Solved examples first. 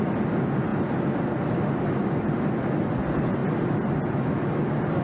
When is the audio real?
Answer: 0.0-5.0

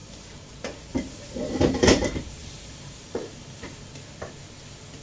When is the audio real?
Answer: 0.5-0.9; 3.9-5.0

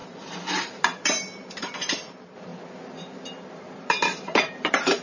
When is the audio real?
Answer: 2.5-3.8

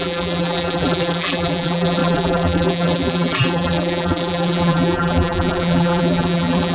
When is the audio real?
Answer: none

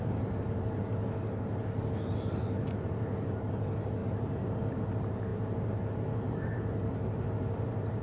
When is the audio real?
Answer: 0.0-4.0; 4.8-5.3

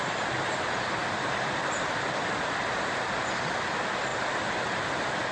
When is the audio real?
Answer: 0.0-5.3